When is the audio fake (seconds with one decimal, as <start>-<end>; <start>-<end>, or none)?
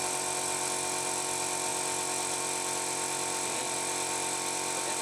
none